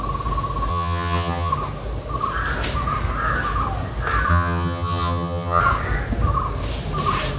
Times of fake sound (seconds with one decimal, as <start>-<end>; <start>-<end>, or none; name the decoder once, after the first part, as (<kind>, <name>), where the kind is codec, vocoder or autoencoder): 0.7-1.5 (vocoder, HiFi-GAN); 4.3-5.6